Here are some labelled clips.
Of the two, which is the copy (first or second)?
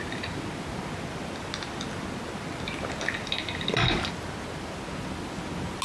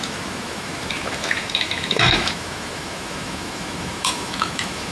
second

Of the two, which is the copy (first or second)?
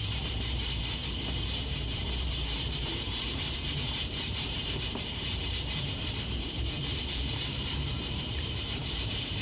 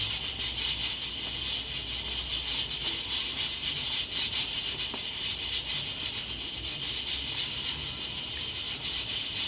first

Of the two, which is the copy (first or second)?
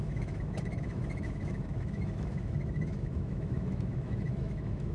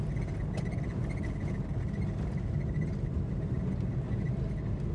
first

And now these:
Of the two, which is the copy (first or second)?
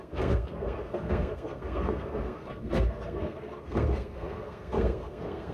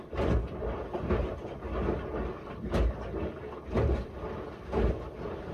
first